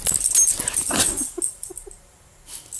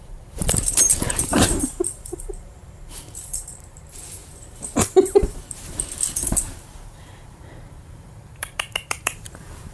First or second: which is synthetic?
second